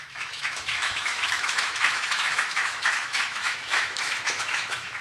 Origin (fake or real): fake